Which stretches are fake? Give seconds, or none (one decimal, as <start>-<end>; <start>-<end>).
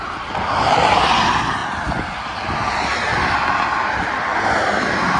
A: none